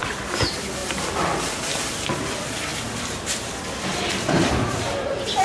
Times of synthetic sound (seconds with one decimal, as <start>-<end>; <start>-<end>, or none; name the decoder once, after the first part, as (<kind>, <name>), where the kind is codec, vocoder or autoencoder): none